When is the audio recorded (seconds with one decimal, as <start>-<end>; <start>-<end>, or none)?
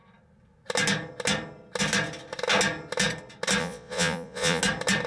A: 0.0-3.6; 4.6-5.1